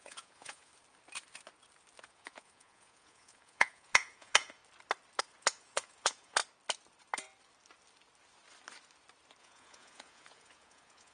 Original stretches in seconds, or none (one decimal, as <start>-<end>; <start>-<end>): 0.7-2.0; 4.6-5.2; 6.4-9.4